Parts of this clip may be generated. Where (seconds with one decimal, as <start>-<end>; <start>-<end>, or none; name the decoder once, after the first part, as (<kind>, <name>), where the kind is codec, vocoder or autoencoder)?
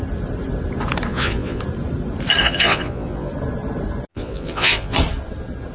1.1-1.6 (vocoder, Vocos); 2.4-3.3; 4.1-5.0